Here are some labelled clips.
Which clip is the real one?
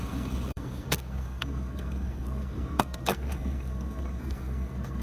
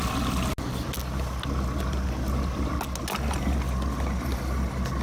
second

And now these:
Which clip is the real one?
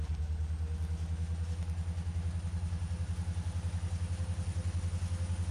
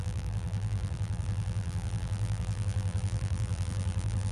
first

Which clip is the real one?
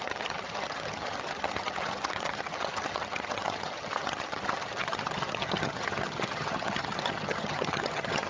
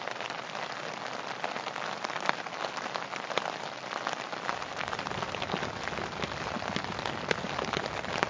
second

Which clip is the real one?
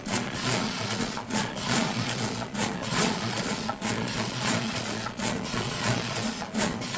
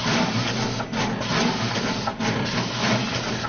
second